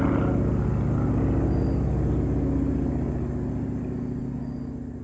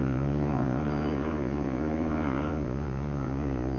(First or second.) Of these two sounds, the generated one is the second